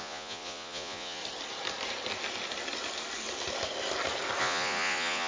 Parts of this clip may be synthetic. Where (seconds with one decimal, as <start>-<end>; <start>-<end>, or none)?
0.0-1.2; 4.4-5.3